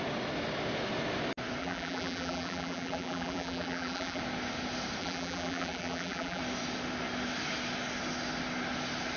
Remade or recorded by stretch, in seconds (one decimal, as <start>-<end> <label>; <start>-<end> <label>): 0.0-1.6 recorded; 1.6-4.2 remade; 4.2-5.0 recorded; 5.0-6.4 remade; 6.4-9.2 recorded